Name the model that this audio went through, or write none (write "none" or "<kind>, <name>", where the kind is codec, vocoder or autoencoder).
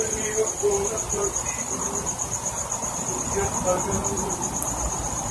vocoder, BigVGAN v2